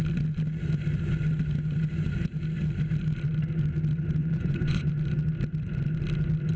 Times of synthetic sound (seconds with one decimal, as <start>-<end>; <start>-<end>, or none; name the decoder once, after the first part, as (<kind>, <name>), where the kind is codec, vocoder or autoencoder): 4.2-4.9 (vocoder, Vocos)